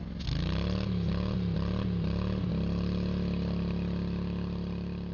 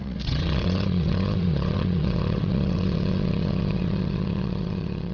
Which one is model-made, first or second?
second